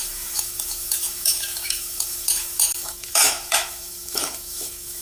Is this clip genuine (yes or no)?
no